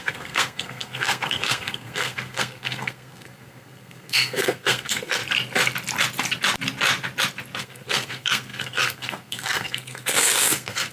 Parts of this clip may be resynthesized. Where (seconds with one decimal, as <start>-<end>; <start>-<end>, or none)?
0.0-5.2; 7.6-10.9